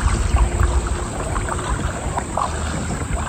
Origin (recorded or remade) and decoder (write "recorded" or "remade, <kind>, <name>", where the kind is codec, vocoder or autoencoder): recorded